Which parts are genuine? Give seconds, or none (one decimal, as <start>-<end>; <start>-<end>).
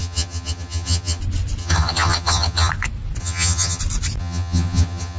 1.2-1.6; 2.7-3.2; 3.8-4.2